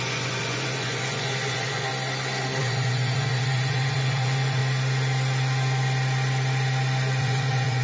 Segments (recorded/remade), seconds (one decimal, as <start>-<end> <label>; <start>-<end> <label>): 0.0-1.9 remade; 1.9-2.6 recorded; 2.6-4.6 remade; 4.6-7.2 recorded; 7.2-7.8 remade